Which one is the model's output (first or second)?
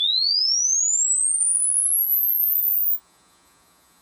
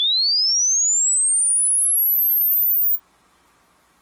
first